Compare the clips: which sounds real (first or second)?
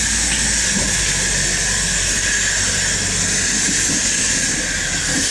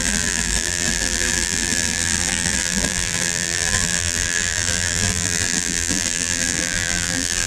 first